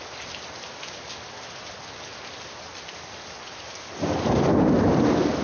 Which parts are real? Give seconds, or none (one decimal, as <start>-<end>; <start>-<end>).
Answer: 0.0-5.4